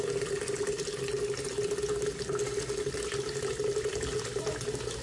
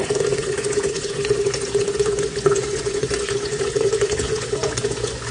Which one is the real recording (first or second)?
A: first